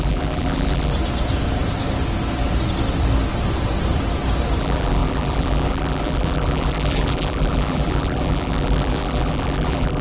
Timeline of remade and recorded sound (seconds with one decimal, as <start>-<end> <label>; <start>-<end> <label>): 0.0-0.9 remade; 0.9-4.6 recorded; 4.6-10.0 remade